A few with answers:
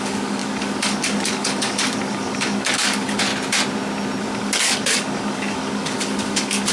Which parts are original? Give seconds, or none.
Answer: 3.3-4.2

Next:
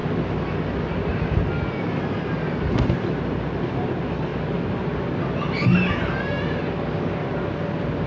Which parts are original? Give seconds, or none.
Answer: 0.0-8.1

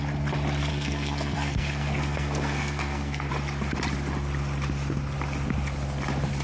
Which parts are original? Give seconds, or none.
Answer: 0.0-0.7; 3.3-6.4

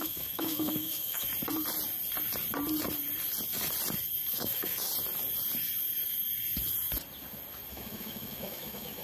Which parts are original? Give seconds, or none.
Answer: 1.3-4.3; 4.9-7.7

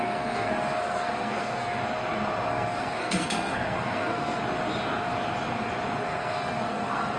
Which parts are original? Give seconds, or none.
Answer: 1.8-2.5; 4.4-6.0

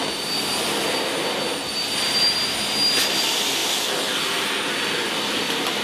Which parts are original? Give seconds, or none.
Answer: 0.0-5.8